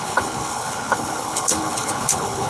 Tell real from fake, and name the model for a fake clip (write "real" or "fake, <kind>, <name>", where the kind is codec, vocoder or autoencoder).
fake, codec, HILCodec